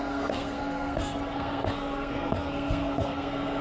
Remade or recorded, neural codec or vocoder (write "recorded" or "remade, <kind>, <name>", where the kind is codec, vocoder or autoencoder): remade, codec, SNAC